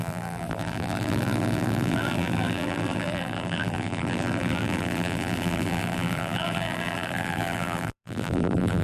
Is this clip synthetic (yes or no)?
yes